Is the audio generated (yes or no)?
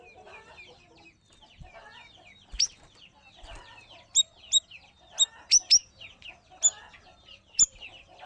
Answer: no